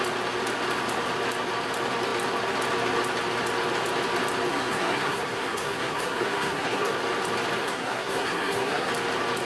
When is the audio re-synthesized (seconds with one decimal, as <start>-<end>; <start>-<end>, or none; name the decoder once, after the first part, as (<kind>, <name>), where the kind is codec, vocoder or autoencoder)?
4.5-7.0 (codec, SNAC); 7.6-8.9